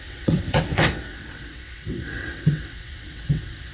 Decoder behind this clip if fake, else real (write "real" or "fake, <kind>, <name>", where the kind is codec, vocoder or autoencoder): fake, vocoder, WaveNeXt